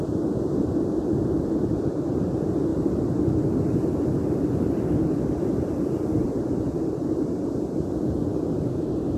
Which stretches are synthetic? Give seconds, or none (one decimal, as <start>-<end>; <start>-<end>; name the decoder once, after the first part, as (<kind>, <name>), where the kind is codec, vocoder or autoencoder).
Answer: none